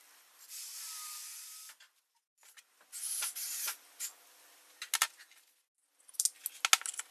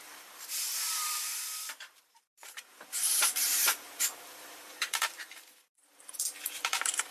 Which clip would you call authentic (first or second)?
first